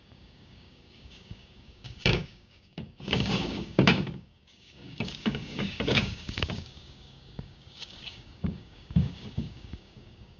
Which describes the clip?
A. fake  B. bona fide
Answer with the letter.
A